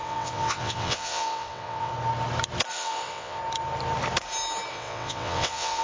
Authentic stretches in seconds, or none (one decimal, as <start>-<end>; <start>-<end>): 1.9-2.7; 3.4-4.7